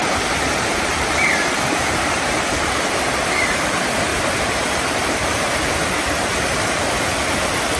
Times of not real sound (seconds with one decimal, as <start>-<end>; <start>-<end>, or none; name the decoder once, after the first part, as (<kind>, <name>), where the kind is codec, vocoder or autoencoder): 0.7-3.3 (vocoder, BigVGAN v2); 4.1-6.9